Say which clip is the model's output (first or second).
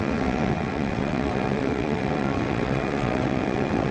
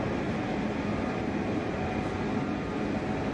first